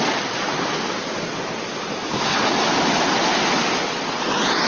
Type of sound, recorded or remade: recorded